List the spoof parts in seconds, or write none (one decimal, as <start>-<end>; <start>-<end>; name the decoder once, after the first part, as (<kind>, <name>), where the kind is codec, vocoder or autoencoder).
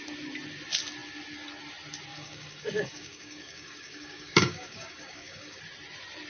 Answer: 2.1-5.6 (codec, DAC)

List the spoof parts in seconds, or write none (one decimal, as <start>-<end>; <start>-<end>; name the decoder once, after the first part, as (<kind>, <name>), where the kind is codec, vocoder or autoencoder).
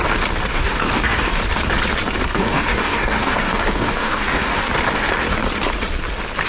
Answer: 0.5-1.4 (codec, DAC); 2.3-4.7